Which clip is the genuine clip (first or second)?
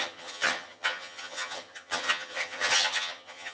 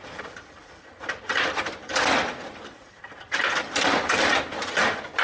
second